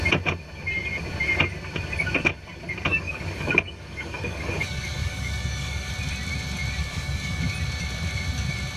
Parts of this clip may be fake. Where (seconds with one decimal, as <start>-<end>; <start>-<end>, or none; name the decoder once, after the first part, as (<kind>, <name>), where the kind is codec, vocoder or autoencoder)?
2.9-5.9 (codec, DAC); 6.8-7.4